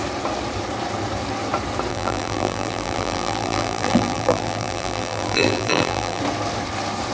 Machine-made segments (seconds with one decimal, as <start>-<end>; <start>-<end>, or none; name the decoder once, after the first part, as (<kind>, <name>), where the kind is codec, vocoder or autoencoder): 1.9-6.2 (vocoder, BigVGAN v2)